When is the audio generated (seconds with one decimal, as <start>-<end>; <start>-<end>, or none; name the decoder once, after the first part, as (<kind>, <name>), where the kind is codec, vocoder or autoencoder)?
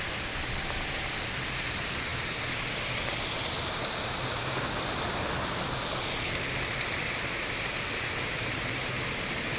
none